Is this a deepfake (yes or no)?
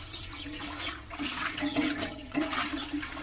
yes